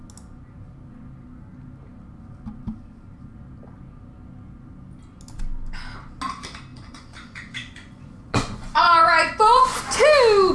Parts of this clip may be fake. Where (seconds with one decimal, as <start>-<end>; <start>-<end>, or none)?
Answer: 6.7-9.8